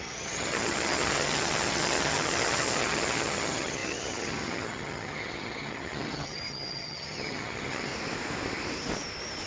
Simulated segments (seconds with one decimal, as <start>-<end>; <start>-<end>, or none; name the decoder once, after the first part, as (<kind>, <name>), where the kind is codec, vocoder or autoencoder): 0.0-7.9 (vocoder, HiFi-GAN)